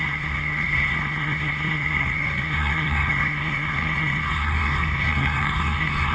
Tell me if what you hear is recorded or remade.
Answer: remade